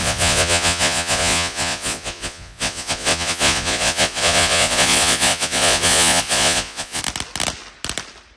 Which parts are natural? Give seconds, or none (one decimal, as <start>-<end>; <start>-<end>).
7.0-8.4